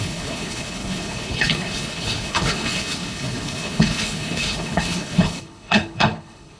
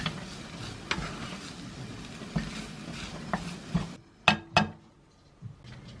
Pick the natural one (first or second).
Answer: second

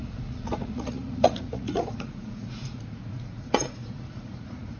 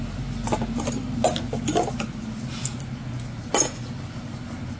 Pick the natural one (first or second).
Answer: second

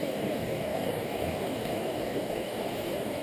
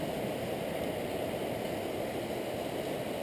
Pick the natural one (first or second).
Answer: second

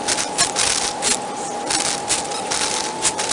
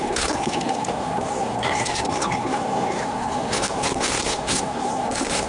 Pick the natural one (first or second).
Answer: first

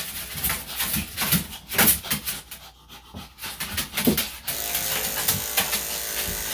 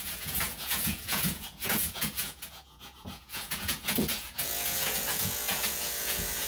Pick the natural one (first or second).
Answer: first